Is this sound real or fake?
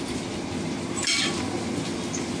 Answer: real